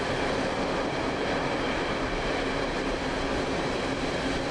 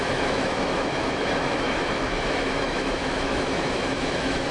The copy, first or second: second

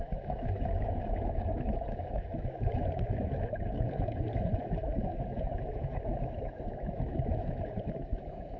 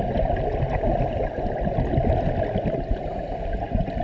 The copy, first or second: first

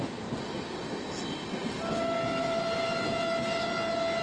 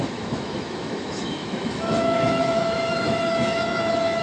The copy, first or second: second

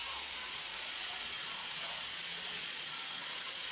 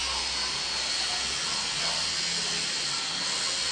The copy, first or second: first